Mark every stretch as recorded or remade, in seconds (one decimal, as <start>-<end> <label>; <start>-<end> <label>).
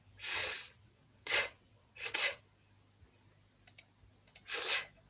0.0-0.4 recorded; 0.4-2.4 remade; 2.4-5.1 recorded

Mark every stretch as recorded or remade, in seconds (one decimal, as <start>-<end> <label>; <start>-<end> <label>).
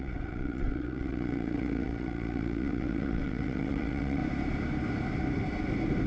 0.0-4.2 remade; 4.2-6.1 recorded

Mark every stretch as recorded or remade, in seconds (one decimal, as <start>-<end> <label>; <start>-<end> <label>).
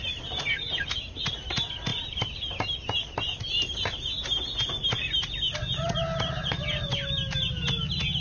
0.0-8.2 recorded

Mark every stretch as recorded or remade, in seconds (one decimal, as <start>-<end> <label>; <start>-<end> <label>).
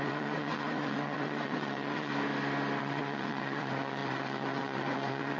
0.0-2.1 remade; 2.1-2.8 recorded; 2.8-5.4 remade